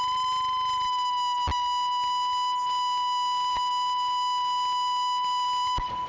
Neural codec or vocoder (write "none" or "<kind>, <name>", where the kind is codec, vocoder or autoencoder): none